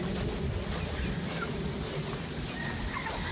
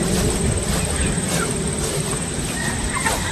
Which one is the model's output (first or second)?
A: second